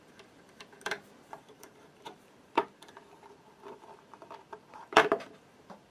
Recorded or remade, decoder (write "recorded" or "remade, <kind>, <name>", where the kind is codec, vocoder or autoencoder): remade, vocoder, BigVGAN v2